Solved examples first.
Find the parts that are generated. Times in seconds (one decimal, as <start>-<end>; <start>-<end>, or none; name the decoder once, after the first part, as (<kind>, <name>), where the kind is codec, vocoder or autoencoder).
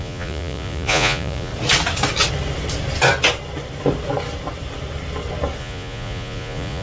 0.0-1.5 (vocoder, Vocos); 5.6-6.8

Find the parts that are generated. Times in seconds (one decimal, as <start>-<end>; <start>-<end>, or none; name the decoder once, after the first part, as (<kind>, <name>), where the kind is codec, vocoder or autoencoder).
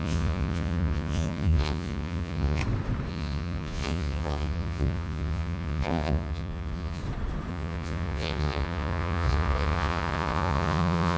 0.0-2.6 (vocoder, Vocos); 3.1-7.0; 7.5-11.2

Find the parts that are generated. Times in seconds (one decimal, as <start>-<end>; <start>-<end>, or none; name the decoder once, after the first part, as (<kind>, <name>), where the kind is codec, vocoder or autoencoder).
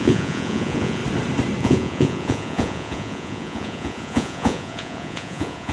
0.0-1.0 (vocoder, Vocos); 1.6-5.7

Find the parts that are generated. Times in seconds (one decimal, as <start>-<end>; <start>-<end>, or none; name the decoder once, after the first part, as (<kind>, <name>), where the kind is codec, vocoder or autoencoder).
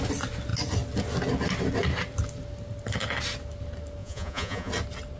4.0-4.7 (vocoder, Vocos)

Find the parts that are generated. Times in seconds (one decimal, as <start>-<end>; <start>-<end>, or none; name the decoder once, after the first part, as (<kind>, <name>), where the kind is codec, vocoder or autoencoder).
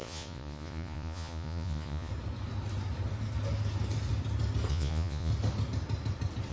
0.0-2.1 (vocoder, Vocos); 4.7-5.3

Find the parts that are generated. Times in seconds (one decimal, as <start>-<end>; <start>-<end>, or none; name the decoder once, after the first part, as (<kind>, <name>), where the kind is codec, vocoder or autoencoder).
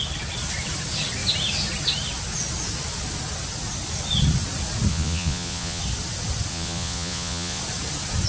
4.9-5.8 (vocoder, Vocos); 6.5-7.6